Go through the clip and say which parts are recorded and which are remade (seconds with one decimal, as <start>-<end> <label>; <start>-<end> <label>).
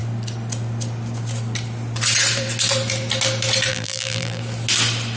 0.0-3.7 recorded; 3.7-4.4 remade; 4.4-5.2 recorded